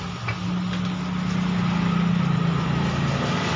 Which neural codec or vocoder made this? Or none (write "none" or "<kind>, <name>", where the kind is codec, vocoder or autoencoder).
none